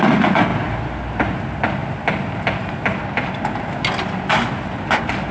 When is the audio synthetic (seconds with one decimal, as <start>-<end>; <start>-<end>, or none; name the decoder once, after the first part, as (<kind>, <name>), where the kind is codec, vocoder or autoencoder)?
none